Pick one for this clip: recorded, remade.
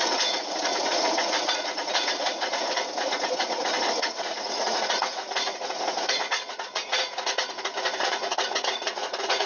remade